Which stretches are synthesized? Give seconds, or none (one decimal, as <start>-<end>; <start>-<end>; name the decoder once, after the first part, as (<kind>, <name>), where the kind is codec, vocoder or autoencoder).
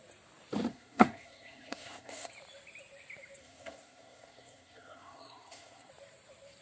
0.7-2.3 (codec, SNAC); 3.4-5.9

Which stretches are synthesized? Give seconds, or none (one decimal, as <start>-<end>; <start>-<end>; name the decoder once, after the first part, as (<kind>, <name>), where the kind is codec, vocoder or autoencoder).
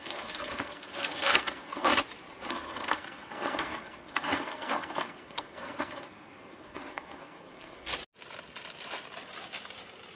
0.0-1.9 (codec, SNAC); 2.5-7.9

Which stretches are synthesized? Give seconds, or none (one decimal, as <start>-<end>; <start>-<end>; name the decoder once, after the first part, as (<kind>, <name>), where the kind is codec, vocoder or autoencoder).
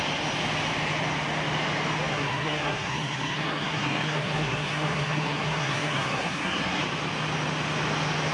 2.1-6.8 (codec, SNAC)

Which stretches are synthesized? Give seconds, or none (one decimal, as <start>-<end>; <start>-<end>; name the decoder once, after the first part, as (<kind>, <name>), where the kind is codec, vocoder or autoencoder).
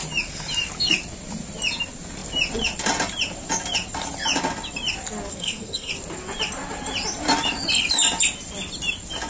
5.3-5.9 (codec, SNAC)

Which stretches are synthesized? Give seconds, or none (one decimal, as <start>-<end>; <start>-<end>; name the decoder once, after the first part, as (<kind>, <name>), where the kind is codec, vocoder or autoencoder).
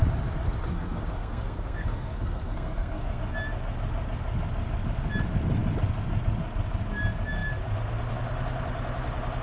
0.7-3.2 (codec, SNAC)